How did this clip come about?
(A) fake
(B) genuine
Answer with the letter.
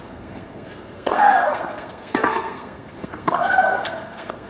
A